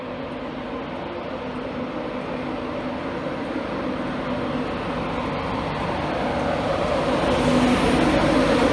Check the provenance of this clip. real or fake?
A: real